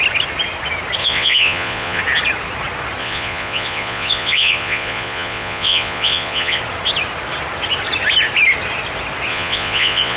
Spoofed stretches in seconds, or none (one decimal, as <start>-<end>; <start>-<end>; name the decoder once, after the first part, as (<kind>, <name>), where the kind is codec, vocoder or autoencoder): 1.0-2.0 (vocoder, Vocos); 3.0-6.6; 9.3-10.2